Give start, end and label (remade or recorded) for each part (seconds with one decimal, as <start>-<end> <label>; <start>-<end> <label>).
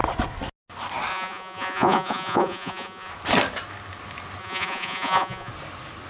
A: 0.0-1.1 recorded; 1.1-3.1 remade; 3.1-4.4 recorded; 4.4-5.5 remade; 5.5-6.1 recorded